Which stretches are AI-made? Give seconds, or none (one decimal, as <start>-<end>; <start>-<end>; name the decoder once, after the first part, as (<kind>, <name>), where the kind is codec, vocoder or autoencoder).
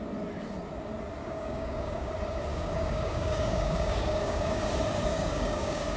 1.2-2.1 (codec, DAC); 2.5-4.6; 5.1-6.0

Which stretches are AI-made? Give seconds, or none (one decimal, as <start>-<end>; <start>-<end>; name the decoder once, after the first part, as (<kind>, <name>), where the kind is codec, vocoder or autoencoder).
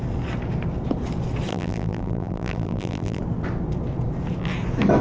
1.5-3.2 (vocoder, BigVGAN v2)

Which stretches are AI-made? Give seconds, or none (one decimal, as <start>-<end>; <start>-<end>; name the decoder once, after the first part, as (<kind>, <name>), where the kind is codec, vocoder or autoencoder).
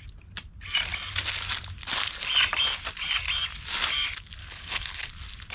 4.4-5.1 (codec, HILCodec)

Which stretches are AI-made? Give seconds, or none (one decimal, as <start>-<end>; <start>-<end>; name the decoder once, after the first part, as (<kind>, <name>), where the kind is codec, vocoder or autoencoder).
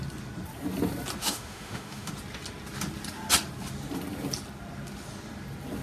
1.2-2.1 (autoencoder, DAC-VAE)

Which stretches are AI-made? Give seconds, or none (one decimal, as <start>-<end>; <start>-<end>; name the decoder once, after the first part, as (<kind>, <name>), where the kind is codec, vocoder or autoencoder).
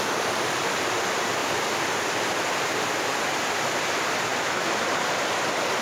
0.0-1.4 (vocoder, BigVGAN v2); 2.1-5.8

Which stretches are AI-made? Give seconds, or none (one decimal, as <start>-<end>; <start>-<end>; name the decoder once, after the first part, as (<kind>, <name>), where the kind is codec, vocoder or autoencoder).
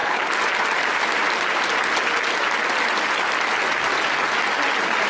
none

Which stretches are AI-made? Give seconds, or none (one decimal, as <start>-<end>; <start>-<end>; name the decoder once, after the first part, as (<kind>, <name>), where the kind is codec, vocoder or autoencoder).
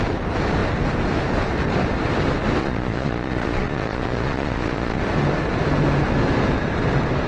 2.6-5.0 (vocoder, Vocos)